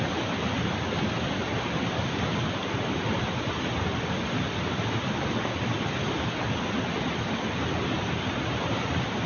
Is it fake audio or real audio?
real